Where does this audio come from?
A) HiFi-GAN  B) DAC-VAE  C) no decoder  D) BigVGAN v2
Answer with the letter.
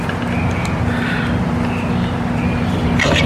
C